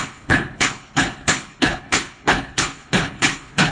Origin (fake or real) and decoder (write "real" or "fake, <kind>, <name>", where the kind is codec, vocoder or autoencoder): fake, codec, HILCodec